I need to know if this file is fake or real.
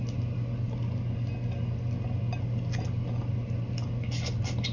real